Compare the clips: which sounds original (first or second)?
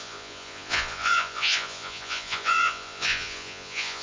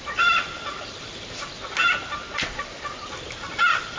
second